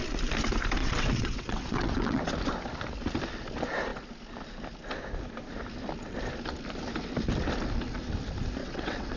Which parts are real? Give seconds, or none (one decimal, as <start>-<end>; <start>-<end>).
0.0-0.8; 2.2-8.6